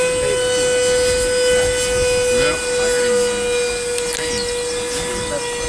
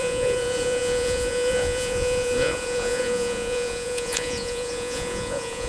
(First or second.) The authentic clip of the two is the first